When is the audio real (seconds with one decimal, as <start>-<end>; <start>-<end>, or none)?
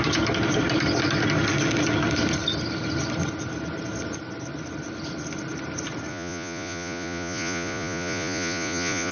0.0-6.1